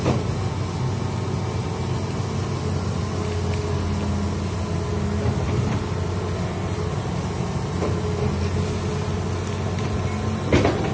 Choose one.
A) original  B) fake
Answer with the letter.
A